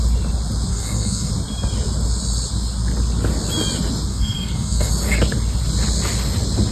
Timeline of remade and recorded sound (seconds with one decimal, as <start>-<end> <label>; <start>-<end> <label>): 0.0-0.7 recorded; 0.7-1.3 remade; 1.3-4.1 recorded; 4.1-4.9 remade; 4.9-6.7 recorded